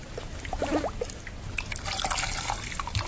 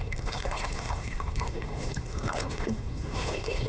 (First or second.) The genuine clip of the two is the first